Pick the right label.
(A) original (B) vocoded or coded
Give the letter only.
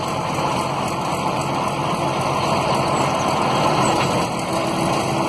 A